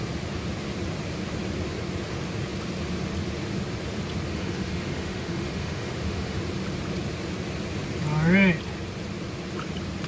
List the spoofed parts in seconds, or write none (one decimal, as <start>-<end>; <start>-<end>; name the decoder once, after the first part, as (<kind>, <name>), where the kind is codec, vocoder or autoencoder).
4.3-6.4 (autoencoder, DAC-VAE)